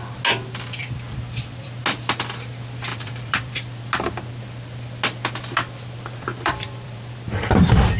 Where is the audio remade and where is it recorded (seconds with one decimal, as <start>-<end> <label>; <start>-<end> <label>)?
0.0-0.8 recorded; 0.8-1.8 remade; 1.8-2.9 recorded; 2.9-3.8 remade; 3.8-6.3 recorded; 6.3-7.3 remade; 7.3-8.0 recorded